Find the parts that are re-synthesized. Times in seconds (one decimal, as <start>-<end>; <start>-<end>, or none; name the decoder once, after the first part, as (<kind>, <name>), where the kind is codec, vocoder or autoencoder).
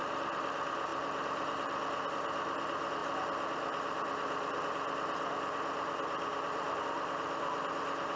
none